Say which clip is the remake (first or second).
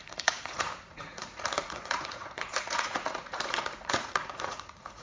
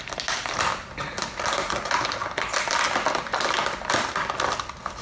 first